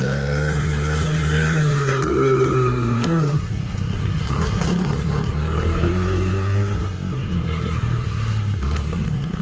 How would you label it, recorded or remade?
remade